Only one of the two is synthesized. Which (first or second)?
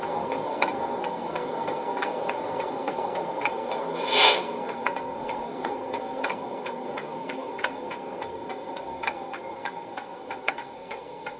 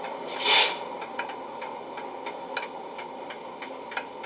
first